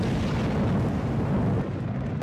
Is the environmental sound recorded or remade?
recorded